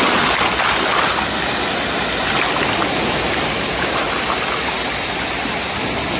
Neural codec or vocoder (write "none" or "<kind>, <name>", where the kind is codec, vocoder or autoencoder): none